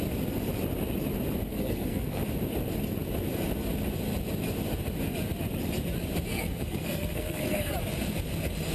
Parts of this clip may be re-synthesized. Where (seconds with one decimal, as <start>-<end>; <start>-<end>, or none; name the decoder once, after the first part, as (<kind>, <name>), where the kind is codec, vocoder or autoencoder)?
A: 1.5-2.2 (codec, SNAC); 6.3-7.7